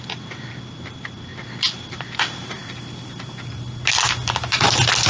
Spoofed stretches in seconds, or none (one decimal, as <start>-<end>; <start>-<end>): none